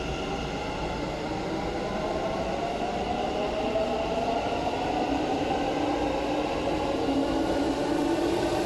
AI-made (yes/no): no